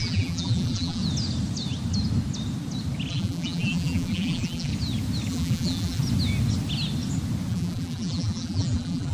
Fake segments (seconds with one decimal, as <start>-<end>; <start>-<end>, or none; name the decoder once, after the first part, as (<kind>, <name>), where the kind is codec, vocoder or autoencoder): 0.0-1.0 (vocoder, BigVGAN v2); 3.1-4.7; 5.3-6.0; 7.5-9.1